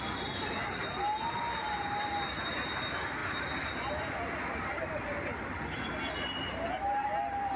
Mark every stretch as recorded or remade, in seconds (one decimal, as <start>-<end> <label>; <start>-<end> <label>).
0.0-7.6 recorded